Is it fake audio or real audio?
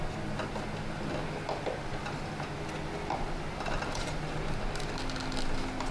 real